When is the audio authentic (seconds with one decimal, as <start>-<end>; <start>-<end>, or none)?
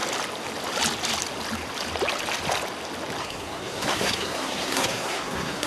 0.0-3.2